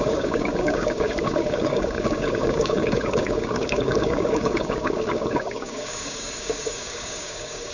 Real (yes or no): no